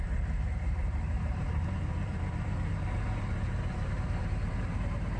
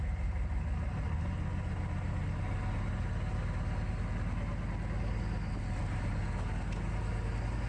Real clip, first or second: second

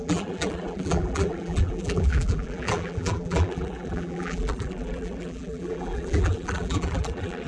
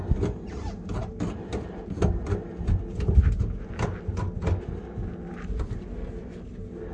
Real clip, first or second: second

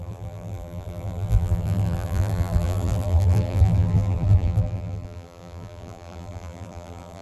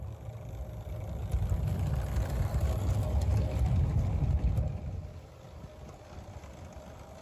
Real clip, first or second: second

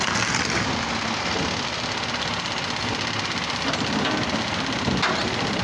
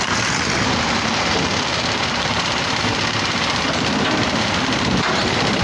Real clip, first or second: first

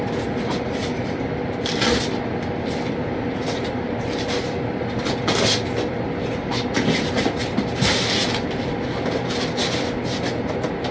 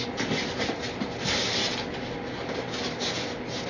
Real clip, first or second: second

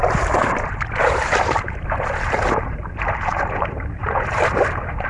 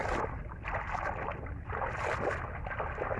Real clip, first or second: second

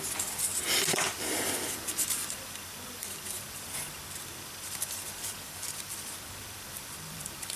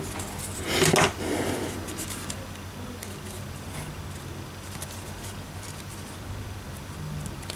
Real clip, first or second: second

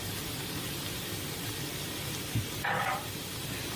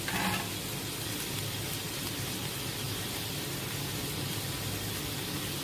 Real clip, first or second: second